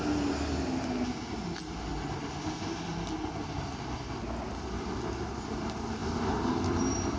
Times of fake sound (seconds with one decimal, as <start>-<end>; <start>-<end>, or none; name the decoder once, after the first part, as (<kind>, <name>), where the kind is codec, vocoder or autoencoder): 2.9-3.8 (vocoder, BigVGAN v2)